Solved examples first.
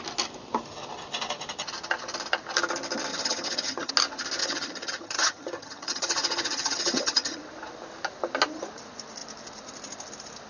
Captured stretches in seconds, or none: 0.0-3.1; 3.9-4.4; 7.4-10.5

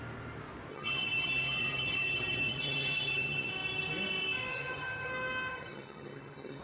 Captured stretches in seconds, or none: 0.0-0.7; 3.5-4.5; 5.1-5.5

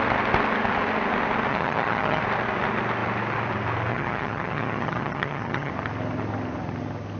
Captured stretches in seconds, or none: 0.0-1.5; 2.2-3.9; 5.7-7.2

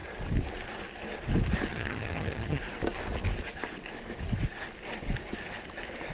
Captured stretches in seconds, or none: 0.0-1.7; 2.6-6.1

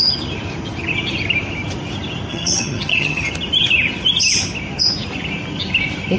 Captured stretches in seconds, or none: 0.0-2.3; 3.3-6.2

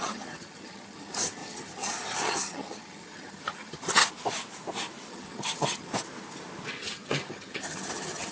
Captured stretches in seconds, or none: 4.0-5.1; 5.9-6.8

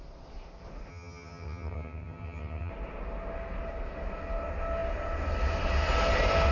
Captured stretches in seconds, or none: 0.0-0.9; 2.7-6.5